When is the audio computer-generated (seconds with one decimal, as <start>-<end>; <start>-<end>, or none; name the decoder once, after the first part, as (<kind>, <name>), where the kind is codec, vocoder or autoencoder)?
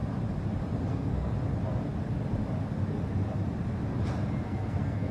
0.9-1.3 (codec, SNAC); 4.4-5.1